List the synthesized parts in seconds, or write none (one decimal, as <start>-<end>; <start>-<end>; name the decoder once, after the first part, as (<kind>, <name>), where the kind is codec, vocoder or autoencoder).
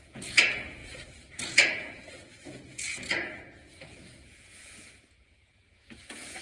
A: 0.0-6.4 (vocoder, Vocos)